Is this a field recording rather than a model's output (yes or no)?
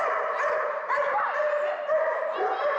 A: no